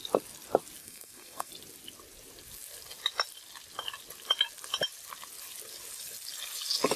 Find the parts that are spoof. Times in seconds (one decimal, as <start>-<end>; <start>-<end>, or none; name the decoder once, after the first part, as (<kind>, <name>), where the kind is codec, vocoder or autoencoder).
0.8-1.5 (codec, SNAC)